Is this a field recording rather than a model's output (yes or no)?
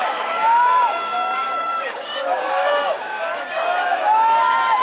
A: no